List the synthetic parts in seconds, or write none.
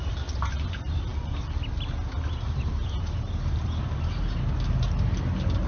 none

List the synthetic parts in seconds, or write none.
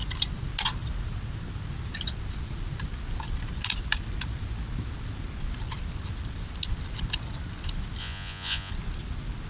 8.0-8.7